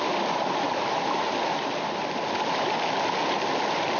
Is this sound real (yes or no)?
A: yes